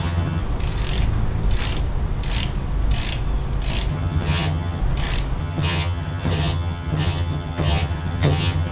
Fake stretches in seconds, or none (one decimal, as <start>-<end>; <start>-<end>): 0.0-0.4; 3.9-4.8; 5.4-8.7